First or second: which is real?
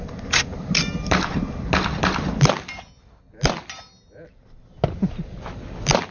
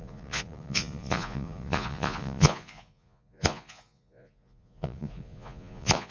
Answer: first